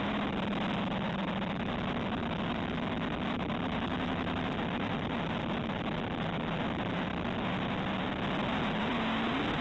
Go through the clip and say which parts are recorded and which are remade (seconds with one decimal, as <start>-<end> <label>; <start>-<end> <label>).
0.0-9.6 recorded